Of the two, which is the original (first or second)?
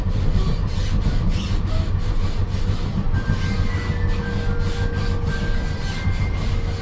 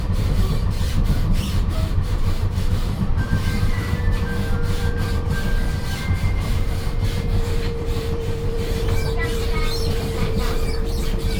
first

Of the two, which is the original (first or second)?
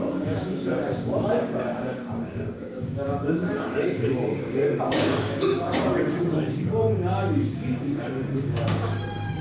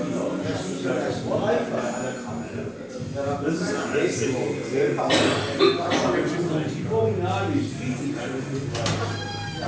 second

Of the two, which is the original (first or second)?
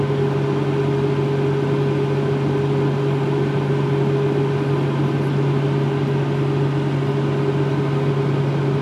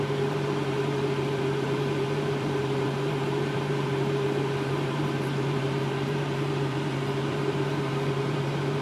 first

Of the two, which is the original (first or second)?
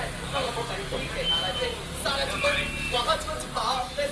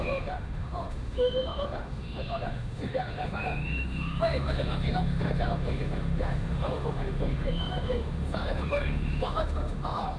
first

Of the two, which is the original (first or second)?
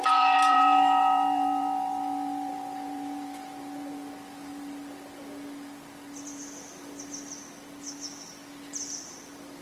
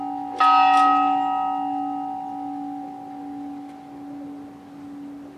second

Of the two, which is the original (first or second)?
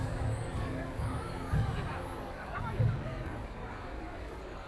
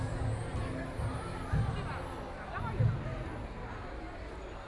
second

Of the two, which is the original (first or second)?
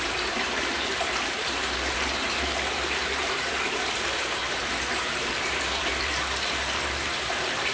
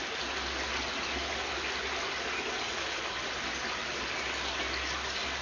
second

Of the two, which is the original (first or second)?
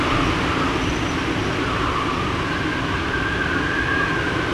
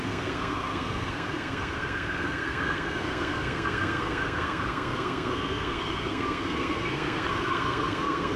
first